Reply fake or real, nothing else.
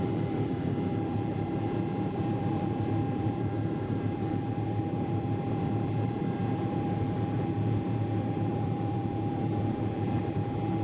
fake